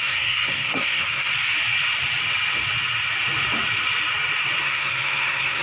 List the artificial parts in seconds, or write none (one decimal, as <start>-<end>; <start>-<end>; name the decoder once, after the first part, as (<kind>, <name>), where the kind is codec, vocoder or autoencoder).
0.0-1.3 (codec, SNAC); 4.6-5.6